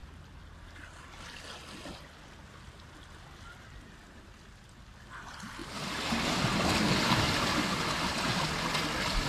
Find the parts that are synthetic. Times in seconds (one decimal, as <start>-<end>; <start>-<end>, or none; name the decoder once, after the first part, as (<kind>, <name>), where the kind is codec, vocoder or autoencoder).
none